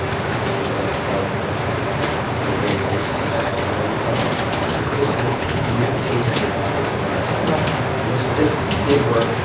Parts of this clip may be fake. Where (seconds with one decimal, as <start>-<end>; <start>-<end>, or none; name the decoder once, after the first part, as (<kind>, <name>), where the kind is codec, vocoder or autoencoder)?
2.7-3.6 (codec, HILCodec); 4.7-6.4